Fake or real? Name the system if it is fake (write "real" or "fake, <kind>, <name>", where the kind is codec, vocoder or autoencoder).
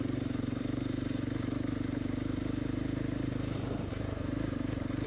fake, vocoder, BigVGAN v2